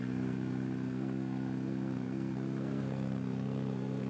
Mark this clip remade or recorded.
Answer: remade